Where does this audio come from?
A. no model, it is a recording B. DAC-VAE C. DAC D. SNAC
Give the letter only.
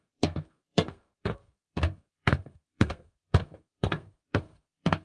D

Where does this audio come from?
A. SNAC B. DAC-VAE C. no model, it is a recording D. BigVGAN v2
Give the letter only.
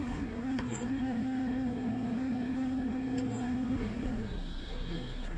A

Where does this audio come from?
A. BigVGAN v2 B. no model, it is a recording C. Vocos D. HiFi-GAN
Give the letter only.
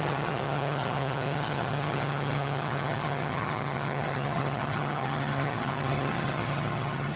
D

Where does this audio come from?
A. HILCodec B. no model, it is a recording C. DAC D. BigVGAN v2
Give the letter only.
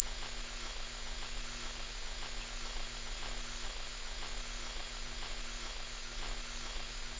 C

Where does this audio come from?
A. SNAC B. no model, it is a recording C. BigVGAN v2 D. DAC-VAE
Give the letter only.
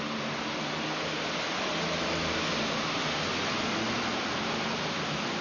B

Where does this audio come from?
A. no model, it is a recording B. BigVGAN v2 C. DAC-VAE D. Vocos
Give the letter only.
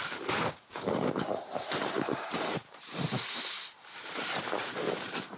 B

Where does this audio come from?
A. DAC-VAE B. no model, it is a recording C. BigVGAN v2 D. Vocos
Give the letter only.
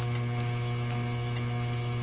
B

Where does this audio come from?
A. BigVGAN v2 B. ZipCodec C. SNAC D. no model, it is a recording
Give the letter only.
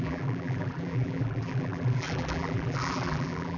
A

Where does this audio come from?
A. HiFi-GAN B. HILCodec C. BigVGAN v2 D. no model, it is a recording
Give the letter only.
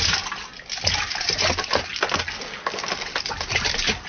D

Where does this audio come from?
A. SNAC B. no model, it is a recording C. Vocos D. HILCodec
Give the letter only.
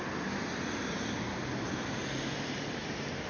B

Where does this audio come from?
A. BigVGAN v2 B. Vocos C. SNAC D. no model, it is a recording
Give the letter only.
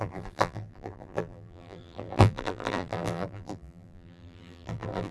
A